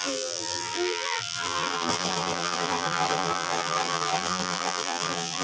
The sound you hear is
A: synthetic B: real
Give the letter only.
A